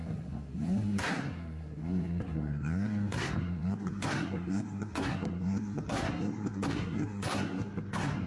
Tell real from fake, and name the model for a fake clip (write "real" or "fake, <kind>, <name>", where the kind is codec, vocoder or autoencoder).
fake, codec, SNAC